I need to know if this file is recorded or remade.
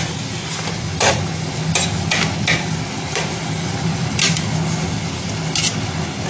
recorded